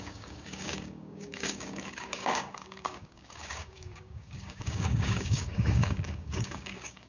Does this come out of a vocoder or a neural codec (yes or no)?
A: yes